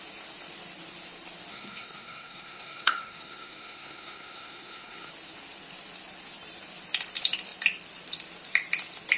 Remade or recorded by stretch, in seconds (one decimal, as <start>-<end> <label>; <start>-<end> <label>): 0.0-1.5 recorded; 1.5-5.1 remade; 5.1-9.2 recorded